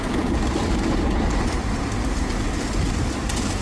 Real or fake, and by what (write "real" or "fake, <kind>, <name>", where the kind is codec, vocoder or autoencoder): real